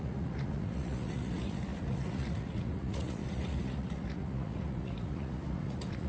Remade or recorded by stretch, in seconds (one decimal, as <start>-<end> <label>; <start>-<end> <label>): 0.0-6.1 remade